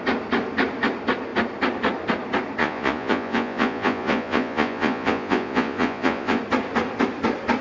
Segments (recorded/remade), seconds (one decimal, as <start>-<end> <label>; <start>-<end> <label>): 0.0-2.6 recorded; 2.6-6.4 remade; 6.4-7.6 recorded